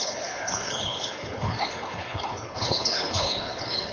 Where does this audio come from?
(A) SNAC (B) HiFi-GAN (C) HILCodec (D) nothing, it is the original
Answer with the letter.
C